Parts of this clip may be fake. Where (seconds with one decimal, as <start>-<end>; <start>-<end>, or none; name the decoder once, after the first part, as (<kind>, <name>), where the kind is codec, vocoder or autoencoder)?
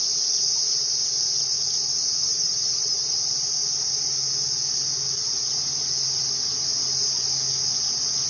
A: 2.2-3.2 (vocoder, HiFi-GAN)